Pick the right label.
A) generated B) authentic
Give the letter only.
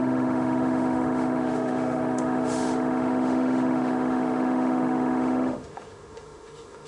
A